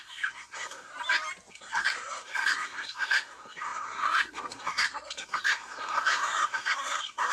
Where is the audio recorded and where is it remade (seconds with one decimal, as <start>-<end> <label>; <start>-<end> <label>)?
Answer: 0.0-0.9 remade; 0.9-1.5 recorded; 1.5-7.3 remade